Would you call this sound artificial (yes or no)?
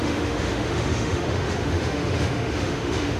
yes